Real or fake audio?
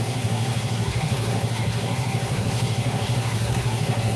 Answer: fake